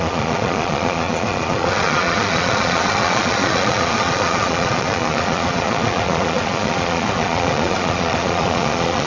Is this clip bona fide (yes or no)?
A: no